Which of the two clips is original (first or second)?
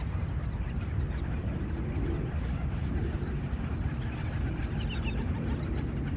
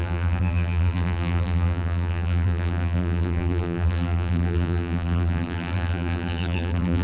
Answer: first